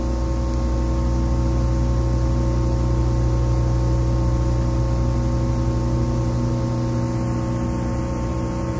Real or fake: real